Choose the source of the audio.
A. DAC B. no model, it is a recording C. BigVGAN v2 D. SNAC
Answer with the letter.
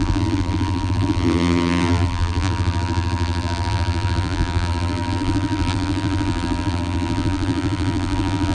C